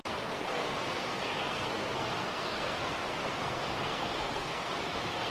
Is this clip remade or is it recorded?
remade